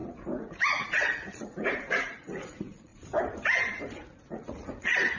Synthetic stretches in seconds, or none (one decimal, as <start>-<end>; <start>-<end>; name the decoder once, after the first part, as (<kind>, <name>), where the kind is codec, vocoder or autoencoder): 0.0-2.9 (vocoder, Vocos); 4.2-5.2